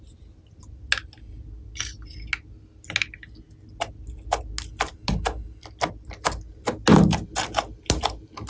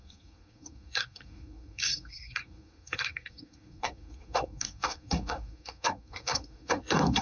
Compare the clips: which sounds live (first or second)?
first